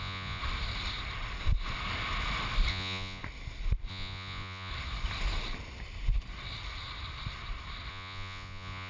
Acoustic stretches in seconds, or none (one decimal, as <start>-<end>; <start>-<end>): 0.4-2.7; 3.2-3.9; 4.7-7.9